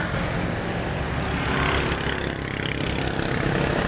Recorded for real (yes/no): yes